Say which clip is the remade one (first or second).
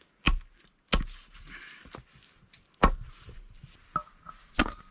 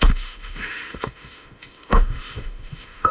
second